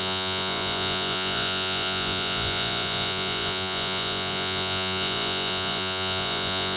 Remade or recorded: remade